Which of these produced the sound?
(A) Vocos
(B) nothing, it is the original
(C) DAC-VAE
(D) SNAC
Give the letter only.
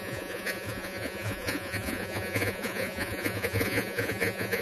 A